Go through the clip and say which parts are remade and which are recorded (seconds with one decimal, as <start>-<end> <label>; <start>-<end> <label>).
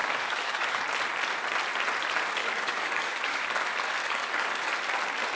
0.0-0.8 remade; 0.8-2.4 recorded; 2.4-3.4 remade; 3.4-4.0 recorded; 4.0-4.7 remade; 4.7-5.4 recorded